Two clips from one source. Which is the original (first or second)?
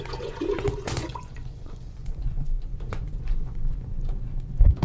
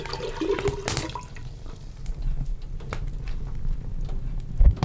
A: second